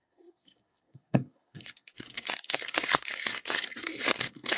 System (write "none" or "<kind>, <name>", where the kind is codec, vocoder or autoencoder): codec, SNAC